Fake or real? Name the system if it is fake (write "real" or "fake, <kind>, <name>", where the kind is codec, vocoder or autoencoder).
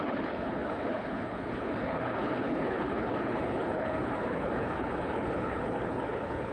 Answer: fake, codec, HILCodec